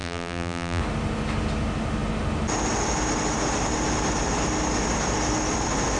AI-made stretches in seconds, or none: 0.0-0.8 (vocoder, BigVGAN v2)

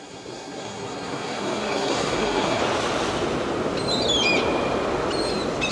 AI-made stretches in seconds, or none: 0.0-2.6 (codec, SNAC)